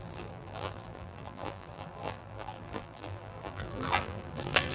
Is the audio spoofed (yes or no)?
yes